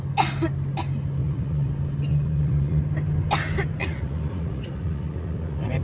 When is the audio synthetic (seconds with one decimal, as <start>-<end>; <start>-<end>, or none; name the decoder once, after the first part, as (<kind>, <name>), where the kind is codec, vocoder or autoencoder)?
1.2-1.7 (vocoder, Vocos); 2.1-2.8; 3.8-5.8